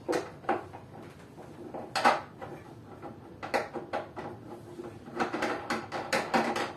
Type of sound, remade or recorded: recorded